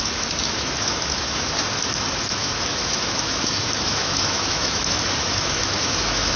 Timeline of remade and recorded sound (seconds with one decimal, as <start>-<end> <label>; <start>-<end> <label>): 0.0-6.4 remade